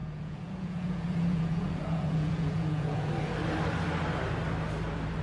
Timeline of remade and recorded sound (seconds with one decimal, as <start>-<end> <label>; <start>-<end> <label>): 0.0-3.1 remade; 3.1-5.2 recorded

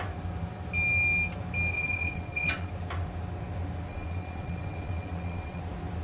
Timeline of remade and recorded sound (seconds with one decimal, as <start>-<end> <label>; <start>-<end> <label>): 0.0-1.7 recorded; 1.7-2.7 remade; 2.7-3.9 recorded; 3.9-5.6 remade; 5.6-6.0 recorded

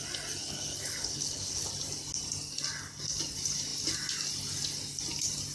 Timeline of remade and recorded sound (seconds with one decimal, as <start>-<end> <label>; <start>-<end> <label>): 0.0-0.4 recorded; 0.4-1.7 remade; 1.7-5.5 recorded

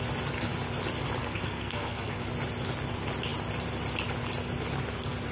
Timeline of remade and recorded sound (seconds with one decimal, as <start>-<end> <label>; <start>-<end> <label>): 0.0-1.2 recorded; 1.2-2.2 remade; 2.2-5.3 recorded

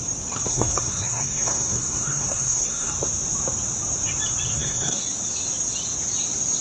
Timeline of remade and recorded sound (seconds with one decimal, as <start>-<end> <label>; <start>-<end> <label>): 0.0-0.5 recorded; 0.5-2.9 remade; 2.9-4.5 recorded; 4.5-5.0 remade; 5.0-6.6 recorded

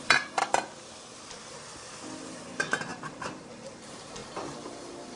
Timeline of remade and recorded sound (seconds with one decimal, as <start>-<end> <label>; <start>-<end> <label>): 0.0-0.4 remade; 0.4-2.2 recorded; 2.2-5.2 remade

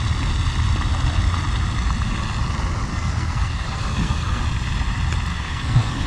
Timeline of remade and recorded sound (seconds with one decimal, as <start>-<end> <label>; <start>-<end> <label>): 0.0-2.9 recorded; 2.9-4.4 remade; 4.4-5.3 recorded; 5.3-6.1 remade